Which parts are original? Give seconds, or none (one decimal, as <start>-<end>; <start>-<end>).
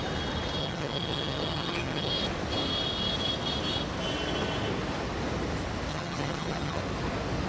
0.0-0.6; 2.1-5.9; 6.8-7.5